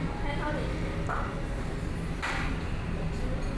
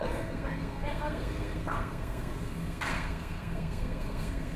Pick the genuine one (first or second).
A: first